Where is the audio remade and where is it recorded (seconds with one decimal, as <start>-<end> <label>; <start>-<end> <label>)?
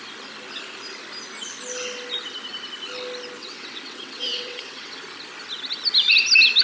0.0-3.4 recorded; 3.4-4.9 remade; 4.9-6.6 recorded